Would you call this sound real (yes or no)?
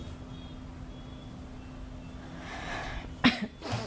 yes